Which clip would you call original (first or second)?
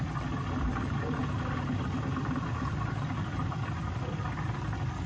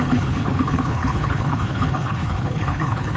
first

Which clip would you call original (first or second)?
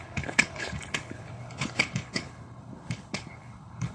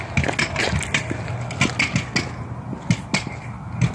second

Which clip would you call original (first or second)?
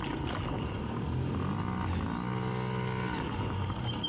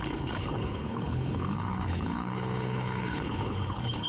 first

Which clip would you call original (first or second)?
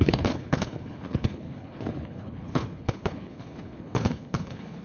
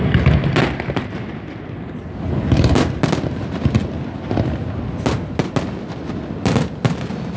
second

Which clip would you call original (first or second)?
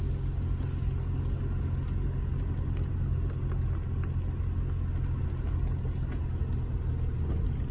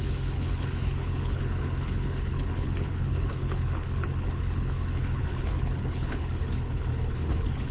first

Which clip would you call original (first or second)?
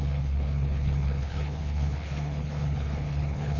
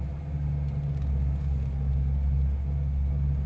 second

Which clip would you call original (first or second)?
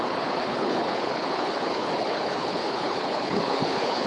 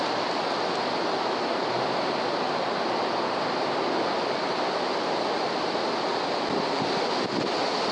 second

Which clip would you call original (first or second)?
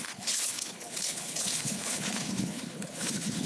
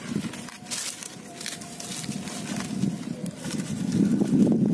second